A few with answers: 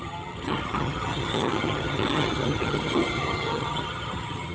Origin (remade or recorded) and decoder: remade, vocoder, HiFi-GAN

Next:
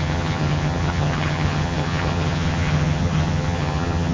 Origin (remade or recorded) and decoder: remade, vocoder, HiFi-GAN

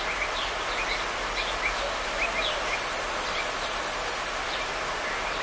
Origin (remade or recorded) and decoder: recorded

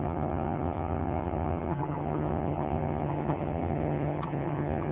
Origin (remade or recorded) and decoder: remade, vocoder, HiFi-GAN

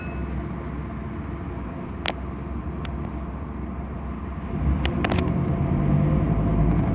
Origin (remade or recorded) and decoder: recorded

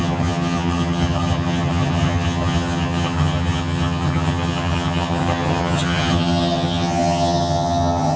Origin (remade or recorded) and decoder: remade, vocoder, HiFi-GAN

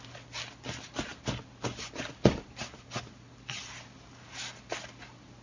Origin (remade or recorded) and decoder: recorded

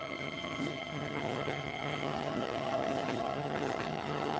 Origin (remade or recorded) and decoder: remade, vocoder, HiFi-GAN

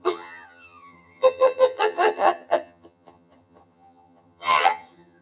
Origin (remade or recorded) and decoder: remade, vocoder, HiFi-GAN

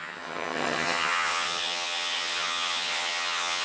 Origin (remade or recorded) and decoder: remade, vocoder, HiFi-GAN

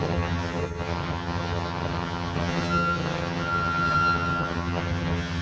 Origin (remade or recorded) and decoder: remade, vocoder, HiFi-GAN